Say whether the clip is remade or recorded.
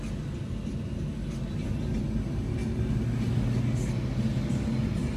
recorded